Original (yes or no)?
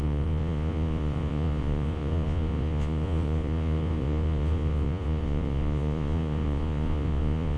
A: no